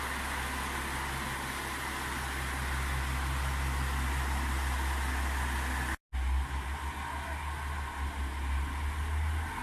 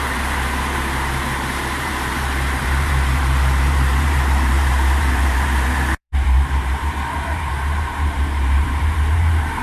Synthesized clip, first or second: second